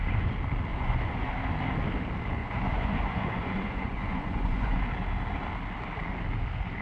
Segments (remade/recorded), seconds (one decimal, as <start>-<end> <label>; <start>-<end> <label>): 0.0-0.7 recorded; 0.7-1.3 remade; 1.3-2.4 recorded; 2.4-4.8 remade; 4.8-6.8 recorded